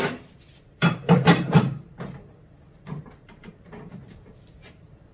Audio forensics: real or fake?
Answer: fake